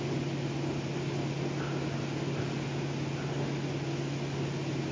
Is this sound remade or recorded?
recorded